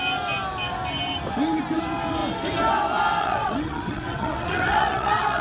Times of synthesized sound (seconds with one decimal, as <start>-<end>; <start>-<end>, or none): 3.2-5.4